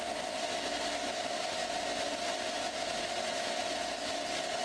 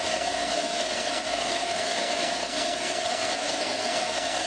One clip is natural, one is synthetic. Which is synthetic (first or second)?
second